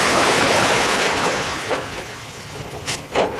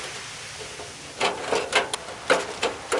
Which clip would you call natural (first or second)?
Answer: second